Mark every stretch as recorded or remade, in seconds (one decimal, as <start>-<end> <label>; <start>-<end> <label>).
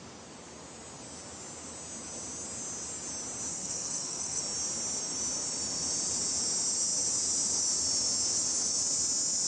0.0-3.5 recorded; 3.5-4.4 remade; 4.4-9.5 recorded